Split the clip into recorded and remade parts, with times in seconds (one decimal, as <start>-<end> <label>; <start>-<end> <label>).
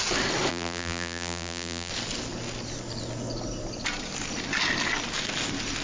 0.0-0.5 recorded; 0.5-1.9 remade; 1.9-5.8 recorded